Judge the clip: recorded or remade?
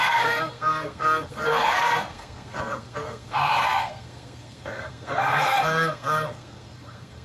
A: remade